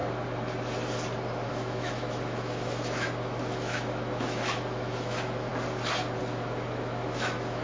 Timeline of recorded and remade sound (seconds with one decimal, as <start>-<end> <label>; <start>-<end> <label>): 0.0-1.5 recorded; 1.5-5.5 remade; 5.5-6.2 recorded; 6.2-7.6 remade